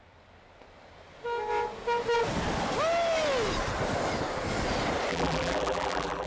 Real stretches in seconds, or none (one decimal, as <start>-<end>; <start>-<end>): 0.0-5.1